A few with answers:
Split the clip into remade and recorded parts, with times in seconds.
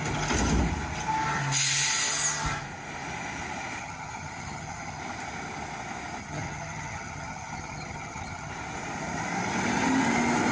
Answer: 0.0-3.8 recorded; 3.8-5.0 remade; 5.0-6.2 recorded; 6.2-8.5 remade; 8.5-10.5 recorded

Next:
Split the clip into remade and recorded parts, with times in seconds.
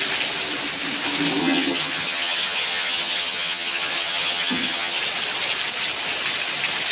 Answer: 0.0-1.4 recorded; 1.4-5.0 remade; 5.0-6.9 recorded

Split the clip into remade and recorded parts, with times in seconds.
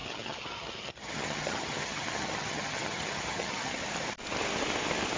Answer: 0.0-3.8 remade; 3.8-5.2 recorded